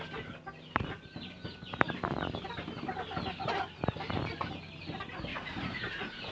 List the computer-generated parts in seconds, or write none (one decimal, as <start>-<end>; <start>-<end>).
5.3-6.3